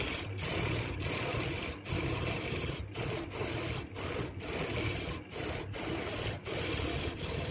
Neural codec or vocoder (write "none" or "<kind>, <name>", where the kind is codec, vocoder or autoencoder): none